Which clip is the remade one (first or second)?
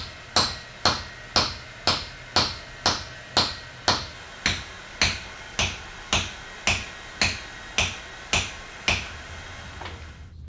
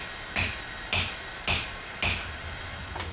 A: second